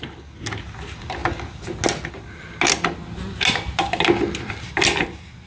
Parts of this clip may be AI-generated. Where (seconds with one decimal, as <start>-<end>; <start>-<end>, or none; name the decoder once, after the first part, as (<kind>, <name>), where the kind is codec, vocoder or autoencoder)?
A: none